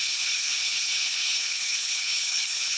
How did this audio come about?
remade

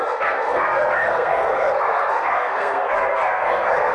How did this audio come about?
remade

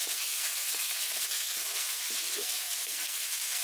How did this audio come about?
remade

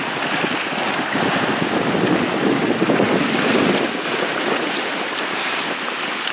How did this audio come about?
recorded